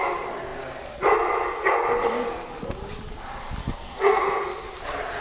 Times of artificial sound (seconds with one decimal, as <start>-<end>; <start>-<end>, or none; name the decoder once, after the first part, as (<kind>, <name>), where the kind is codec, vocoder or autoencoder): 3.6-4.2 (codec, SNAC)

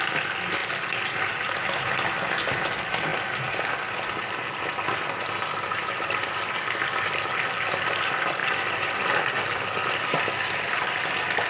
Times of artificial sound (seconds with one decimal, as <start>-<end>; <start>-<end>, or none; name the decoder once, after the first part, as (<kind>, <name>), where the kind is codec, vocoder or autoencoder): none

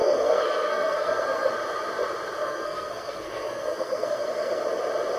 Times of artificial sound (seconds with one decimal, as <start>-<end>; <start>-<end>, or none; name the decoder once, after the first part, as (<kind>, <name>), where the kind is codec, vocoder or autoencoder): 0.0-1.5 (codec, SNAC); 2.4-4.6

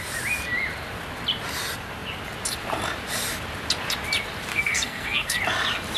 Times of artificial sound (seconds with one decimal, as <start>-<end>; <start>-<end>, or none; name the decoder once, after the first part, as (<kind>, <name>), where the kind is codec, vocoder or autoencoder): 4.5-5.4 (codec, SNAC)

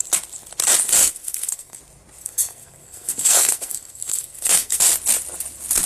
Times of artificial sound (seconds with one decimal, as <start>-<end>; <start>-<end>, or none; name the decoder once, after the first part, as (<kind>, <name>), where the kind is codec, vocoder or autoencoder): 1.0-1.8 (codec, SNAC); 2.2-4.8

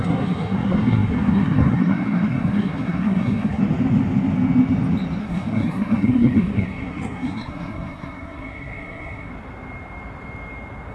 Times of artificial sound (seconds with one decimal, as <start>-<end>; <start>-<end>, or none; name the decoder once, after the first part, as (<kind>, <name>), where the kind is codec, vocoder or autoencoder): 0.0-3.6 (codec, SNAC); 5.2-9.3

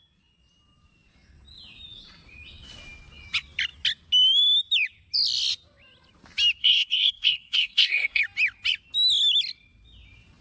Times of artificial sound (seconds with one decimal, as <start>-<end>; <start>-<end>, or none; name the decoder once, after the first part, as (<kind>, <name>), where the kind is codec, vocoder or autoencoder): 6.6-8.2 (codec, SNAC)

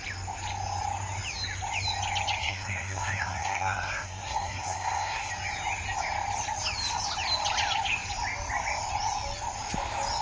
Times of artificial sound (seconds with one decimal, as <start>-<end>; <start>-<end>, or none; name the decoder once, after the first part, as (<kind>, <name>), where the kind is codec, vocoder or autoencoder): 2.4-5.3 (codec, SNAC)